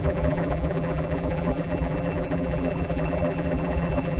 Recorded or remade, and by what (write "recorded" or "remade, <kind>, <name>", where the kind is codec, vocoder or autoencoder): remade, vocoder, BigVGAN v2